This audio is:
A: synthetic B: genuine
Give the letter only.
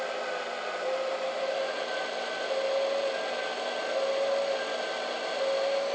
B